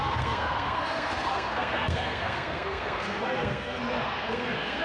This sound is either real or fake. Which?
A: fake